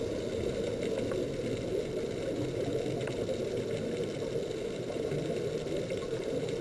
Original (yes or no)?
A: yes